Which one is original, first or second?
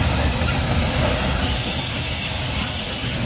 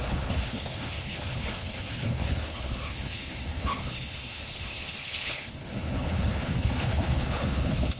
first